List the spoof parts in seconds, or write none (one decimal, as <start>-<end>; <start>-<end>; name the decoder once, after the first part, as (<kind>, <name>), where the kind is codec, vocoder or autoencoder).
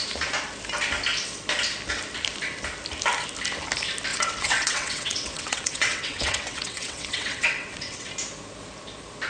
4.1-8.1 (vocoder, WaveNeXt)